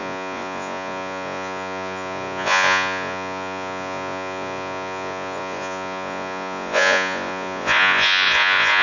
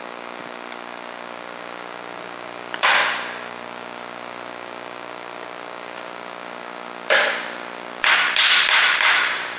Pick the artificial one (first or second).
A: first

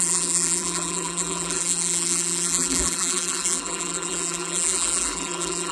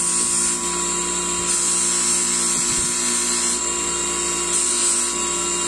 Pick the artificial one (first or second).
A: first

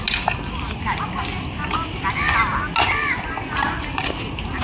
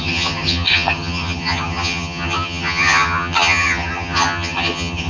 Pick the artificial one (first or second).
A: second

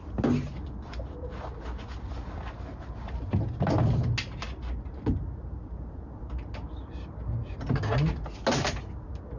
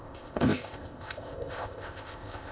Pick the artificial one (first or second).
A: second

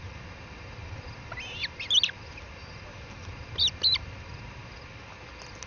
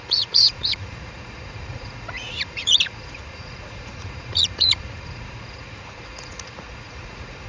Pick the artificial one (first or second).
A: second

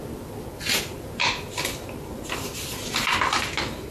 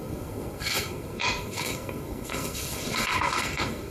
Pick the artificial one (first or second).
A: second